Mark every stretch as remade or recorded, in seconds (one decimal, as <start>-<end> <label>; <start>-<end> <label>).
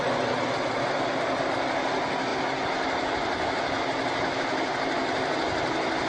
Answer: 0.0-6.1 recorded